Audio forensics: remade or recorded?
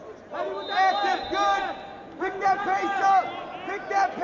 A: recorded